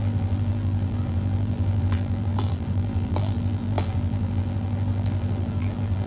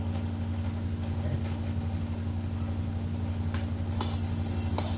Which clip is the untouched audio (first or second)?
second